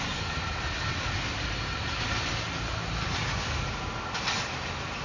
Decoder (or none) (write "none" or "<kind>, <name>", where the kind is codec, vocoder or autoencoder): none